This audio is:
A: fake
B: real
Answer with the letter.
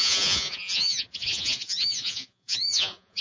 A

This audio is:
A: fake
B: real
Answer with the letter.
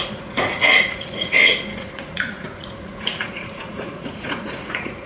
A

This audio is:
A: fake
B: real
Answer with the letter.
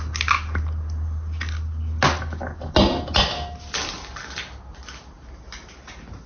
B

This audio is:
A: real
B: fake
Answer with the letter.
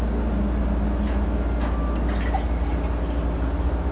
A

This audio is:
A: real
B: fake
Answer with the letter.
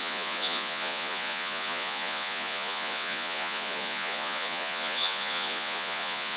B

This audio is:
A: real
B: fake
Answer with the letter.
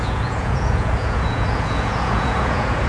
B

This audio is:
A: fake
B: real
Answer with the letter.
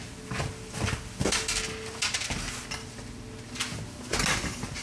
B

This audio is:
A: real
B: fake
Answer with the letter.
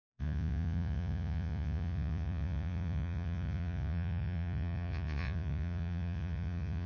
B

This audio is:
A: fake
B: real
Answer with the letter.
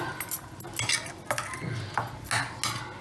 B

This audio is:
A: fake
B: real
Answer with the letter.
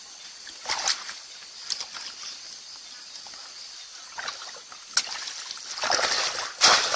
B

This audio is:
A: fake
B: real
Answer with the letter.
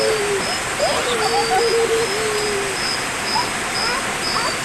B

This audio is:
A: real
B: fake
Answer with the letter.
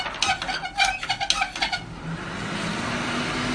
A